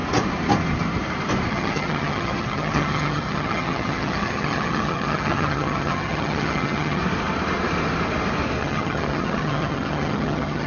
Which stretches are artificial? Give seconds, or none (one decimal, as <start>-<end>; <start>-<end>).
1.5-7.0; 8.6-10.7